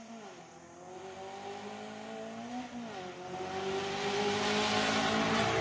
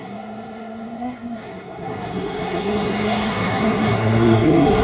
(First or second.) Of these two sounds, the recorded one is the first